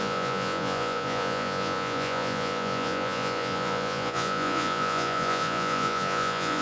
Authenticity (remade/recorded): remade